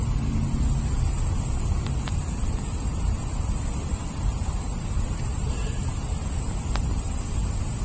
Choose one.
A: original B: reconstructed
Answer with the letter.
A